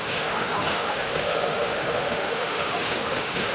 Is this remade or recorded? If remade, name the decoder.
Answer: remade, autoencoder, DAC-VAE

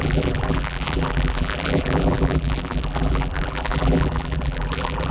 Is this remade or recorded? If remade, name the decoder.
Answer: remade, vocoder, BigVGAN v2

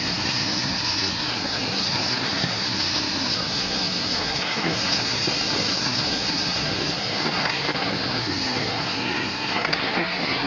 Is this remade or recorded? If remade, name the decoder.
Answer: remade, codec, SNAC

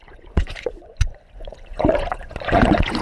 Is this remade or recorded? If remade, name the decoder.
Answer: remade, vocoder, Vocos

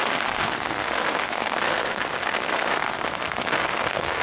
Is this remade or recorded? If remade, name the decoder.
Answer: remade, codec, SNAC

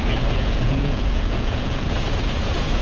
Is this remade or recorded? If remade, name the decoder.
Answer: remade, vocoder, Vocos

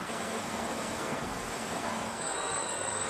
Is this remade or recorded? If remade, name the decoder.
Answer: remade, codec, SNAC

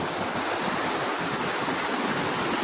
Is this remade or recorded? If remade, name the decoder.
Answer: recorded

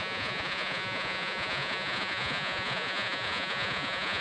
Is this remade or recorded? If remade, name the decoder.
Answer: remade, vocoder, Vocos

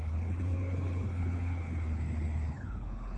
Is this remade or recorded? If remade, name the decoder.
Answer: remade, codec, HILCodec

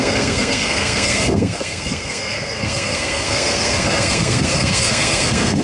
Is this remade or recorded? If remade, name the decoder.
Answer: remade, codec, SNAC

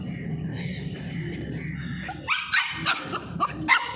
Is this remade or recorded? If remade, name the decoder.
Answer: recorded